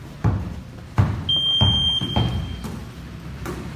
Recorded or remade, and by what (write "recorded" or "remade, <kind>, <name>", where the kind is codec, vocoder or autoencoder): recorded